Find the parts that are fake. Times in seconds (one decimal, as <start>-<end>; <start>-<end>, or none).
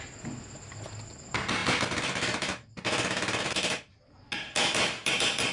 none